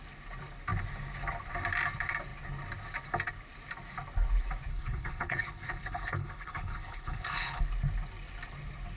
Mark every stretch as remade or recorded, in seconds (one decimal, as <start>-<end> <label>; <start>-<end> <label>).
0.0-4.7 recorded; 4.7-7.6 remade; 7.6-9.0 recorded